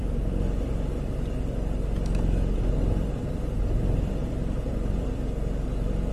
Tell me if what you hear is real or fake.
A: fake